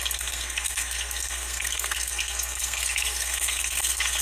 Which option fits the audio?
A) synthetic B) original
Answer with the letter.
A